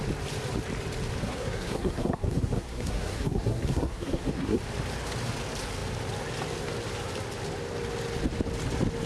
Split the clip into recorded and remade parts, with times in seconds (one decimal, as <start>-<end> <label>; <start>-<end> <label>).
0.0-1.2 recorded; 1.2-4.6 remade; 4.6-9.1 recorded